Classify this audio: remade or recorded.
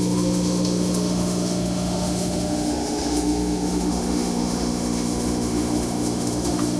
remade